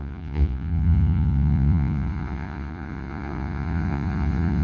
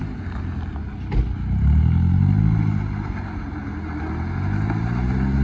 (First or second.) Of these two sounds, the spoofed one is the first